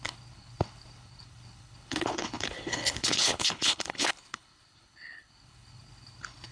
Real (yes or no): no